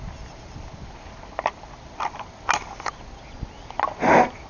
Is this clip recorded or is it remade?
recorded